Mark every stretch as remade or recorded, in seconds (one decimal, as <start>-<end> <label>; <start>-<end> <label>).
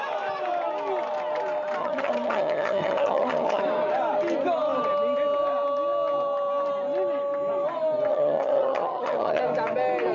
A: 0.0-1.8 recorded; 1.8-3.6 remade; 3.6-8.1 recorded; 8.1-9.4 remade; 9.4-10.1 recorded